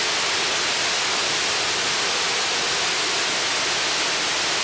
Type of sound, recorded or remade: recorded